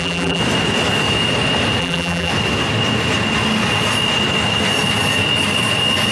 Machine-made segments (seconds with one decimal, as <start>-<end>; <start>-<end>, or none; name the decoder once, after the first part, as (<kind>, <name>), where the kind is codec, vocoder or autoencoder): 0.0-0.4 (vocoder, BigVGAN v2); 1.8-2.3